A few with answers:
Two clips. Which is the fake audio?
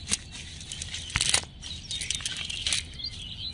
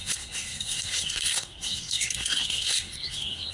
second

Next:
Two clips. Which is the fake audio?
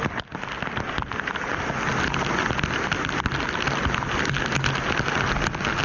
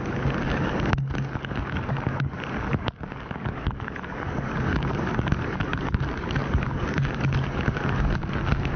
second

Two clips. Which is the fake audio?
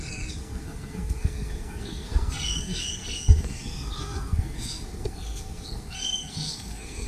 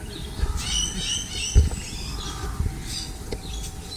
first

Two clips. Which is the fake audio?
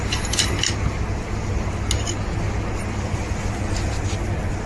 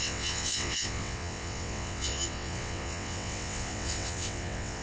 second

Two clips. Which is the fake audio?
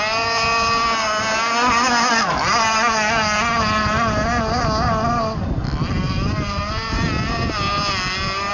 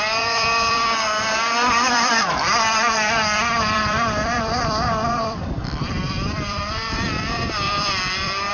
second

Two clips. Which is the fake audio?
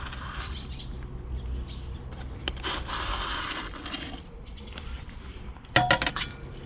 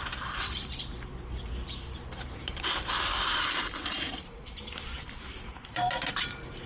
second